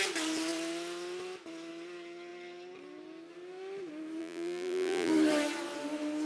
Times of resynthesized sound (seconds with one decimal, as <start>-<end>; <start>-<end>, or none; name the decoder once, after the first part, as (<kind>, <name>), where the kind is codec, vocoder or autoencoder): 4.2-5.1 (vocoder, BigVGAN v2)